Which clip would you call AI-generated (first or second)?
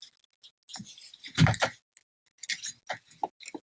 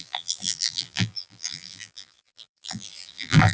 second